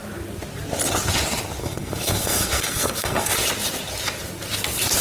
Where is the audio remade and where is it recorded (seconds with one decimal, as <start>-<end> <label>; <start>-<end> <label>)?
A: 0.0-1.6 recorded; 1.6-3.3 remade; 3.3-5.0 recorded